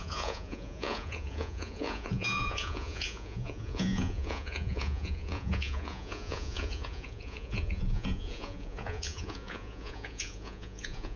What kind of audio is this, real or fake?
fake